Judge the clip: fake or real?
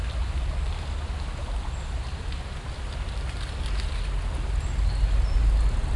real